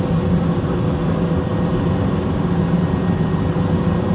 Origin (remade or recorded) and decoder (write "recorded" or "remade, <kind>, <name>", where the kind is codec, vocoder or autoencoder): recorded